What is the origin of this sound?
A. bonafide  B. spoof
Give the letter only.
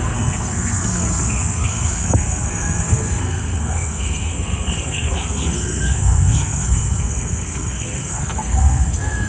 B